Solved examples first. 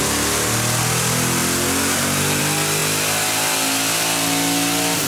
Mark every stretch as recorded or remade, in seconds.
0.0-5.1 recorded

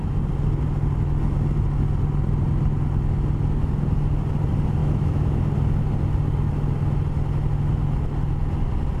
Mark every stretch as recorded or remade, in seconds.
0.0-4.8 recorded; 4.8-5.4 remade; 5.4-9.0 recorded